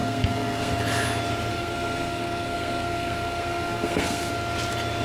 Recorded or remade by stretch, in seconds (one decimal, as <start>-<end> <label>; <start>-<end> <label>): 0.0-0.7 remade; 0.7-1.5 recorded; 1.5-4.3 remade; 4.3-5.0 recorded

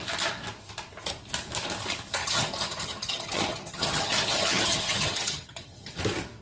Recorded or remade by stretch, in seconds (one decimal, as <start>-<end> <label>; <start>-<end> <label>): 0.0-2.2 recorded; 2.2-6.0 remade; 6.0-6.4 recorded

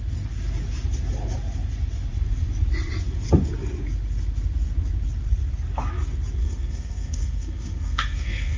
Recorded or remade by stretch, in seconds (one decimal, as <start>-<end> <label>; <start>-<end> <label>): 0.0-6.4 recorded; 6.4-8.6 remade

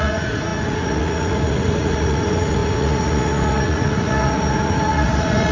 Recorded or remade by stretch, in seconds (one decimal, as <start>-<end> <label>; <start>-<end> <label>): 0.0-5.5 remade

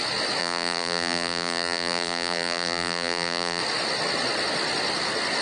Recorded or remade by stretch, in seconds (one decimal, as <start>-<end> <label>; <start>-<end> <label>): 0.0-0.4 recorded; 0.4-3.6 remade; 3.6-5.4 recorded

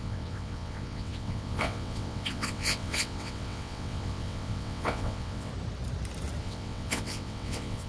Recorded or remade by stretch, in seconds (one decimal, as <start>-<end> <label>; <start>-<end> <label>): 0.0-5.5 remade; 5.5-6.4 recorded; 6.4-7.9 remade